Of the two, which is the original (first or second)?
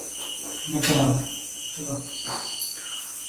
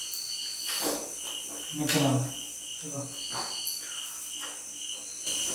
second